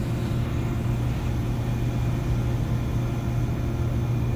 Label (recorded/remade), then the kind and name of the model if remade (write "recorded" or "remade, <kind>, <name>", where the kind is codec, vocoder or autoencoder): recorded